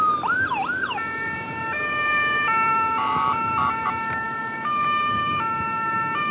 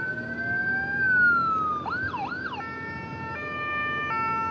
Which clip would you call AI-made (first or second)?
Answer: first